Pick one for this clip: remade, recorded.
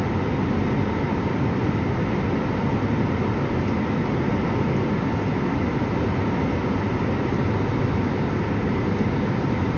recorded